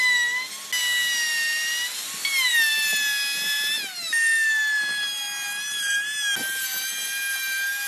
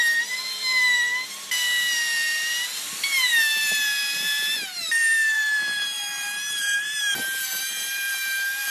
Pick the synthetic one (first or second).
second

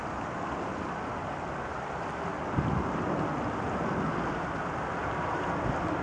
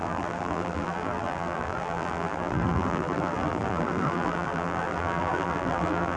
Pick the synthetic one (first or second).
second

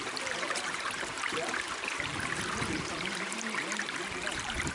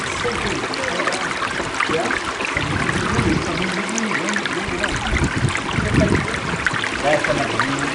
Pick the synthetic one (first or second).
first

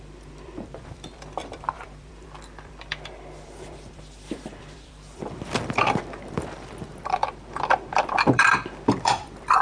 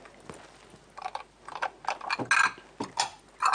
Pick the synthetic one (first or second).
first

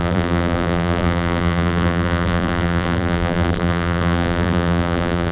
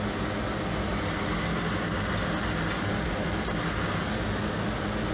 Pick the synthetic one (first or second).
first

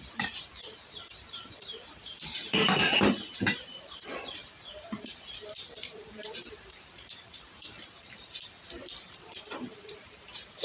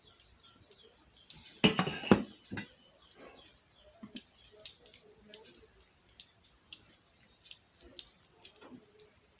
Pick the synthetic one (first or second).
first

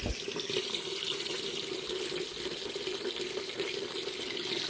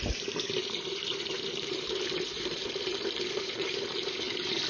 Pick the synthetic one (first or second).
second